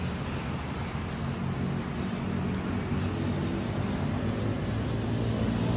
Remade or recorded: recorded